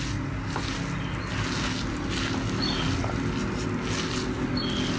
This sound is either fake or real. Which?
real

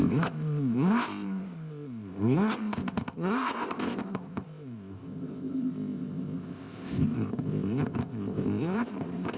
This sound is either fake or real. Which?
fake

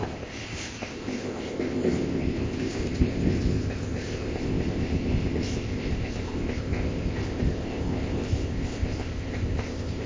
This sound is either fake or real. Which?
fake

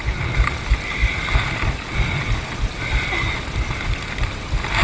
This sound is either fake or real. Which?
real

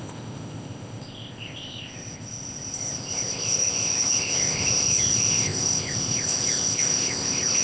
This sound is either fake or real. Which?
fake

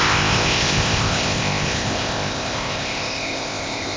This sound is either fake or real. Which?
fake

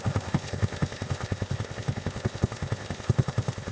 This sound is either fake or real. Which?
fake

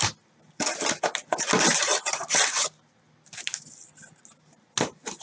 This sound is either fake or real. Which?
real